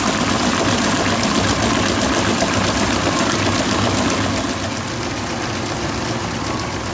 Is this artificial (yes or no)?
no